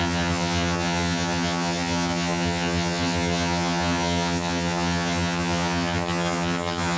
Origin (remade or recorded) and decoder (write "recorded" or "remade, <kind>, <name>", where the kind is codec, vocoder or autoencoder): remade, vocoder, HiFi-GAN